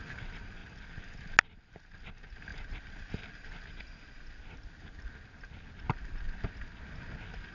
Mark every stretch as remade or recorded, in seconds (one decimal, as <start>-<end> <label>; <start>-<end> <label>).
0.0-7.5 recorded